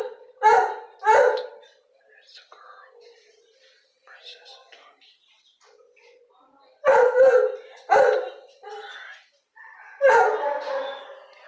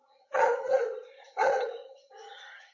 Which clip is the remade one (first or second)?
second